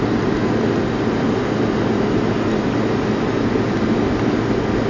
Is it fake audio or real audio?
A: real